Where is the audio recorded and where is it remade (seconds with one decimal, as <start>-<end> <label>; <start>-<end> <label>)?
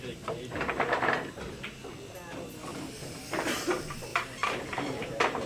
0.0-0.5 recorded; 0.5-1.7 remade; 1.7-4.1 recorded; 4.1-5.5 remade